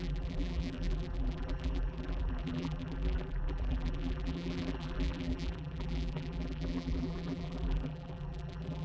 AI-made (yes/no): yes